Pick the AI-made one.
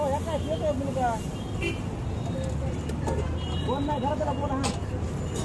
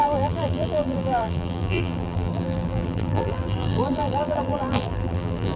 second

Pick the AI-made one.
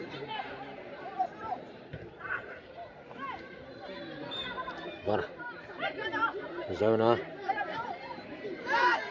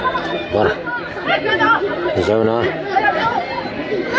first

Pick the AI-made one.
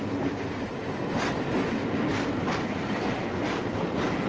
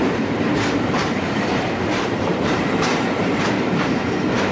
second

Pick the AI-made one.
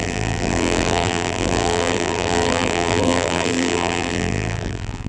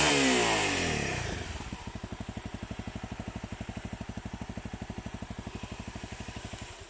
first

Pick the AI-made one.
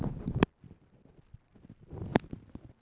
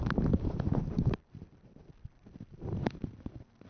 second